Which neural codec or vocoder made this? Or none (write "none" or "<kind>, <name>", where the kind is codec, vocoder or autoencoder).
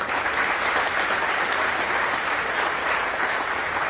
vocoder, BigVGAN v2